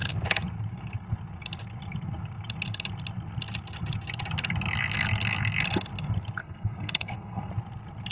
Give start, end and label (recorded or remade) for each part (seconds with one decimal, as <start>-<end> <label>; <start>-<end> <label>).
0.0-6.4 recorded; 6.4-7.5 remade; 7.5-8.1 recorded